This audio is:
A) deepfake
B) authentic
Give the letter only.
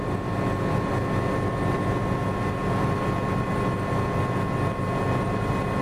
B